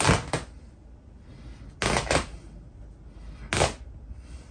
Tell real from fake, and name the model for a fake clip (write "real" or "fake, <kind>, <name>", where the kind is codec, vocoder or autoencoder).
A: real